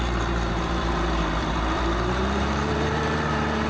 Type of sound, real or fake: fake